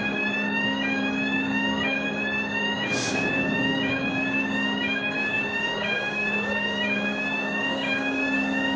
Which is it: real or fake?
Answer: fake